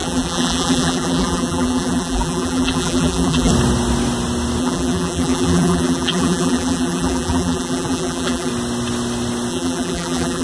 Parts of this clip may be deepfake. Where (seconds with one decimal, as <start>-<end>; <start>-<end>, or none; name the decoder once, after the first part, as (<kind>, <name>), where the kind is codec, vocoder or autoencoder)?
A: 0.0-3.5 (vocoder, BigVGAN v2); 4.6-8.5; 9.5-10.4